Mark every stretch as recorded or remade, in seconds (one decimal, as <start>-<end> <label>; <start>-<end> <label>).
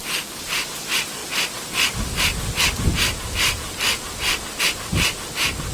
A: 0.0-5.7 recorded